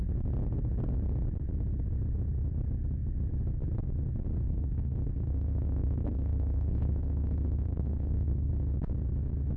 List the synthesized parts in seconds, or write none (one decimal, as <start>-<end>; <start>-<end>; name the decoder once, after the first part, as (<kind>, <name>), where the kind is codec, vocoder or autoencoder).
4.5-8.5 (codec, SNAC)